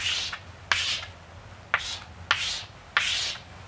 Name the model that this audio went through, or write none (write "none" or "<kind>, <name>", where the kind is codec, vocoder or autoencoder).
none